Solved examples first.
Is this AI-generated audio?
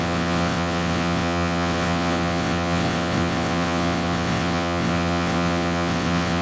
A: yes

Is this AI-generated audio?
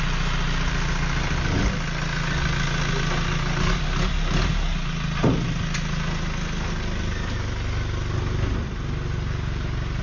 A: no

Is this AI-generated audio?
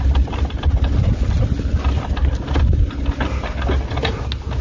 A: no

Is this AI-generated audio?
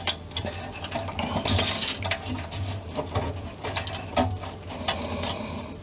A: no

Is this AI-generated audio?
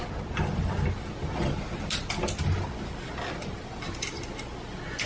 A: no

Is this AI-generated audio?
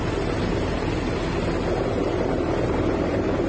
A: no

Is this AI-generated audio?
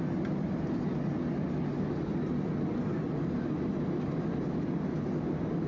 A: no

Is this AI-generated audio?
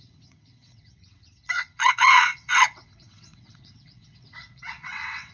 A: yes